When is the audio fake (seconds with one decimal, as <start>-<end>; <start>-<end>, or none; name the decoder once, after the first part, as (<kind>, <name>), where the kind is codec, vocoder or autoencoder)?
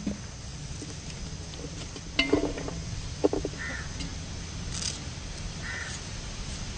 none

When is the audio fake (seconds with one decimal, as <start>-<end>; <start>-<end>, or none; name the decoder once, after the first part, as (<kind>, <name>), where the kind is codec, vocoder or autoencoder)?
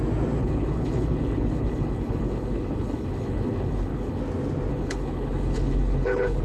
0.4-4.2 (codec, HILCodec); 4.7-6.4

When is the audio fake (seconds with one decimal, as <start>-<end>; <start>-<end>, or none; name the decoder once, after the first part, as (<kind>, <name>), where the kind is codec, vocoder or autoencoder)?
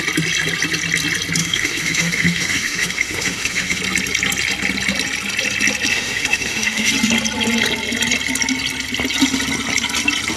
1.4-3.8 (autoencoder, DAC-VAE); 5.9-6.9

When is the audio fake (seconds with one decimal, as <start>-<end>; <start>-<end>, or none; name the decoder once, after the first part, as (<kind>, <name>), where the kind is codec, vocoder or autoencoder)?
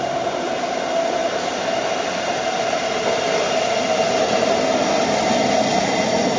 none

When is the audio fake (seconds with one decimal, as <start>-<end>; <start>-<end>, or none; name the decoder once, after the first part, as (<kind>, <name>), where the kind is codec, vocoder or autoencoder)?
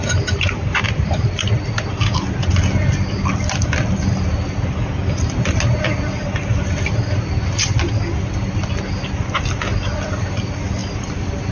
0.0-0.8 (vocoder, BigVGAN v2); 10.8-11.5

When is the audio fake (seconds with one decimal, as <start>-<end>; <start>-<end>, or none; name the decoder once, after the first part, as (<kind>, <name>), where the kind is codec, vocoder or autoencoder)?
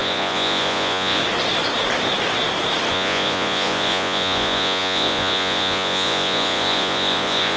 0.0-1.2 (vocoder, Vocos); 2.9-7.6